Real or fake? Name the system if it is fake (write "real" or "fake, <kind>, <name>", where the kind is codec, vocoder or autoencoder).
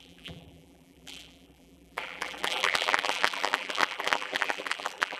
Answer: fake, vocoder, BigVGAN v2